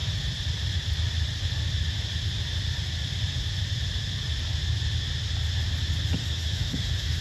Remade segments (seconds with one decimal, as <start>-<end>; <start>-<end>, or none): 6.2-7.2